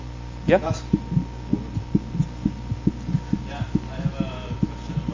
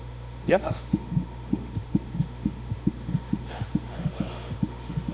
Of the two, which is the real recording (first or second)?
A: first